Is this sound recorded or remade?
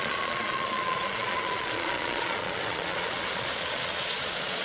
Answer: remade